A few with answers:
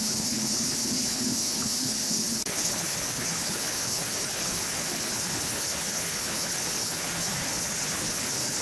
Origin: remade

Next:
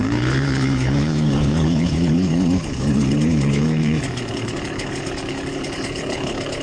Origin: remade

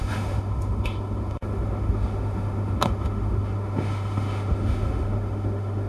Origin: remade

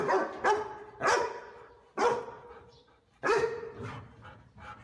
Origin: recorded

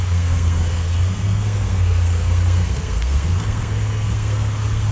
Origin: remade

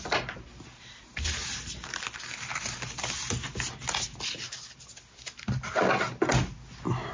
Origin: recorded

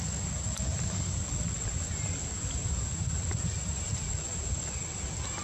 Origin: recorded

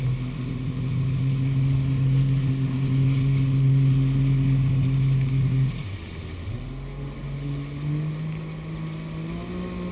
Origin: recorded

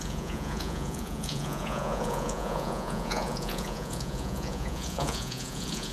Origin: remade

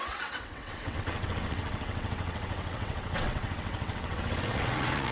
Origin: remade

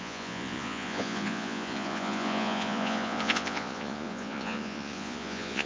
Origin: remade